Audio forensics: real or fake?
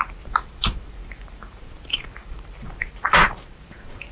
fake